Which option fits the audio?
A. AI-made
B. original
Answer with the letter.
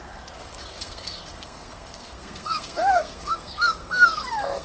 A